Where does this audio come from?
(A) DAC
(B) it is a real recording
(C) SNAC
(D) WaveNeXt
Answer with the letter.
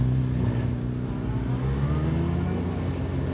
B